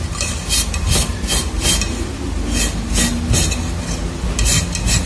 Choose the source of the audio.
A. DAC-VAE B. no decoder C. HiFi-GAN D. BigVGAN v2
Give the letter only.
B